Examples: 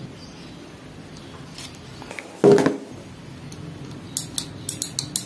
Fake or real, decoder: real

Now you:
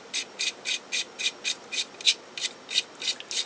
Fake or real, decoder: real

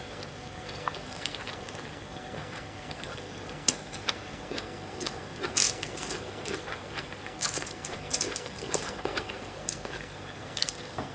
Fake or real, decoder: fake, codec, SNAC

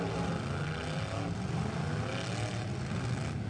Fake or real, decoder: real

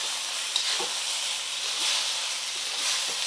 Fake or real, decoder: real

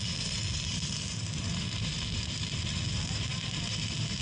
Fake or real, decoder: real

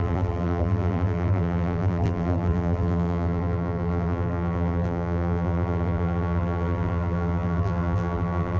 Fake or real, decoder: fake, vocoder, BigVGAN v2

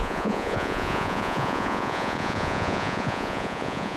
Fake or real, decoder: fake, vocoder, Vocos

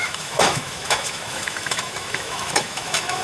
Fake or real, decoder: fake, autoencoder, DAC-VAE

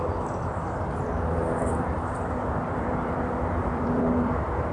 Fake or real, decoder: fake, vocoder, BigVGAN v2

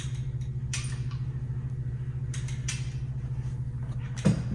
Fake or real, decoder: real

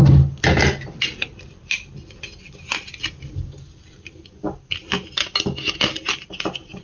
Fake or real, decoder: real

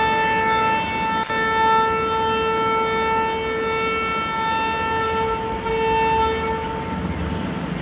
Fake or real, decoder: real